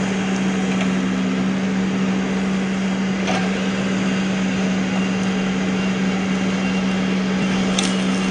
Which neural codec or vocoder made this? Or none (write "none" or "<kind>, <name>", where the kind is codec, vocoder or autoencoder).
none